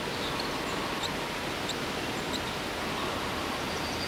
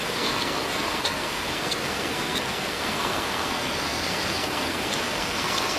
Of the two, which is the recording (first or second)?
first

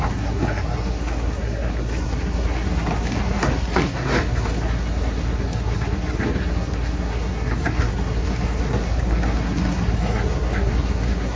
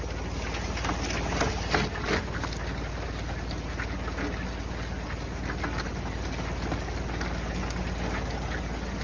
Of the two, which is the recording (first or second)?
second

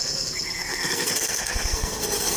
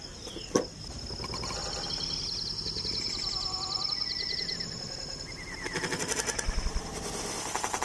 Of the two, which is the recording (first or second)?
second